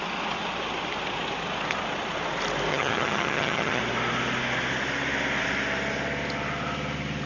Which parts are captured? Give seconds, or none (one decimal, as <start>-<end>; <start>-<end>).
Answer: 0.0-2.7; 3.8-7.3